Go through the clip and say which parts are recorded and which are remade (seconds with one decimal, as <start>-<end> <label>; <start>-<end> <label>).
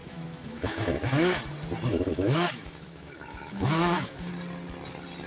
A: 0.0-1.4 remade; 1.4-1.9 recorded; 1.9-4.3 remade; 4.3-5.3 recorded